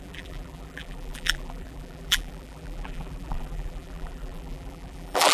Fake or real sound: fake